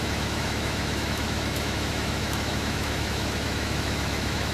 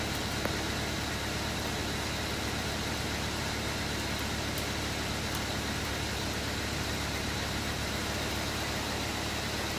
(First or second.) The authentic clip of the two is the second